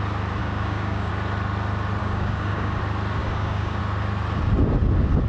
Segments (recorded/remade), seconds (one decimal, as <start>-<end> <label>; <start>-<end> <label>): 0.0-0.4 recorded; 0.4-1.1 remade; 1.1-2.0 recorded; 2.0-2.8 remade; 2.8-3.2 recorded; 3.2-3.8 remade; 3.8-5.3 recorded